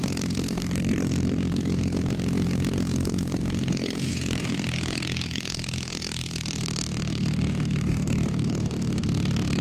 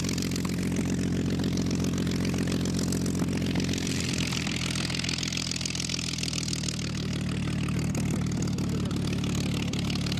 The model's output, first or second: first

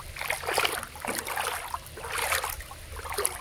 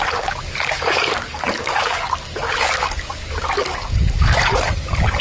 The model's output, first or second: second